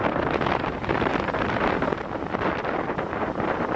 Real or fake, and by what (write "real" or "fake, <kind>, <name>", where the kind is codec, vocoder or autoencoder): fake, vocoder, BigVGAN v2